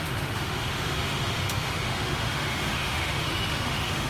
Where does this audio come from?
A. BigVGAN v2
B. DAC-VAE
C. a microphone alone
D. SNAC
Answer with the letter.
B